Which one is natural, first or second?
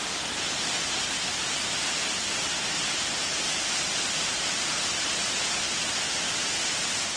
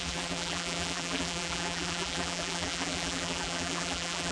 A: first